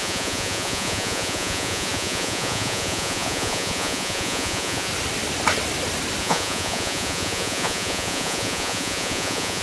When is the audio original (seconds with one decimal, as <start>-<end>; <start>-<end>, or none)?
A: 4.9-6.2